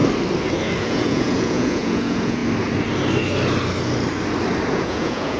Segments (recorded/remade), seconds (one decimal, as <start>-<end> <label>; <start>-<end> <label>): 0.0-0.8 recorded; 0.8-2.4 remade; 2.4-4.7 recorded; 4.7-5.4 remade